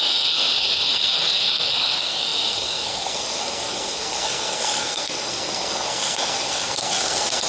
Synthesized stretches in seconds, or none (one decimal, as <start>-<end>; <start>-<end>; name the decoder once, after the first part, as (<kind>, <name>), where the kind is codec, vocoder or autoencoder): 0.0-7.5 (codec, SNAC)